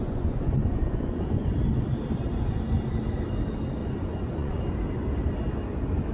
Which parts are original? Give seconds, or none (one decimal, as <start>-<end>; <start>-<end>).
1.5-3.8; 4.6-6.1